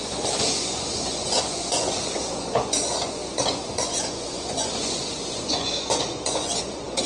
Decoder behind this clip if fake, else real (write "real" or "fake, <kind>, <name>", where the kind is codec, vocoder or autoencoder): fake, vocoder, Vocos